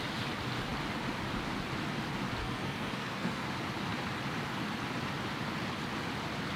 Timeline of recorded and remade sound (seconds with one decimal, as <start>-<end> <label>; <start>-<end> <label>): 0.0-2.4 recorded; 2.4-3.5 remade; 3.5-6.6 recorded